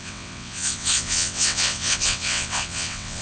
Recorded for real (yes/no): no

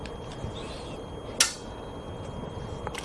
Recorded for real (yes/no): yes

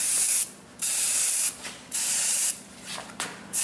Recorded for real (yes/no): no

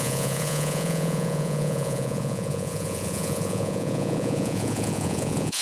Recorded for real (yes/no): no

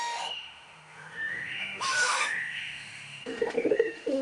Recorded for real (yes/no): no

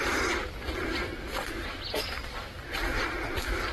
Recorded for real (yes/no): no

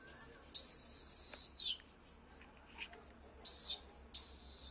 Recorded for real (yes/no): yes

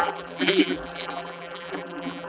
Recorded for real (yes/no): no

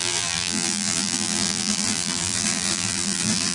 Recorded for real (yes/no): no